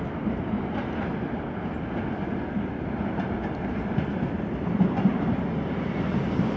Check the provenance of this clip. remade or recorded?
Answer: recorded